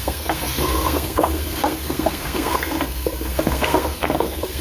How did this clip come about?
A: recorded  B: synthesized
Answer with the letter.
B